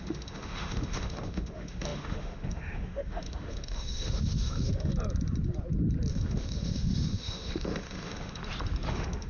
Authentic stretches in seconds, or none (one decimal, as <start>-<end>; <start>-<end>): 4.9-6.1; 8.4-8.9